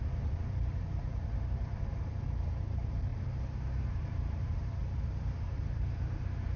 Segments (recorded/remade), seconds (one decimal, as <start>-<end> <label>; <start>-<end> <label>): 0.0-4.8 remade; 4.8-5.4 recorded; 5.4-6.6 remade